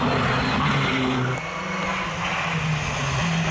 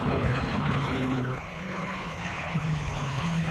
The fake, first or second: second